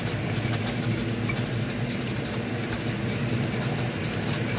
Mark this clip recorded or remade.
recorded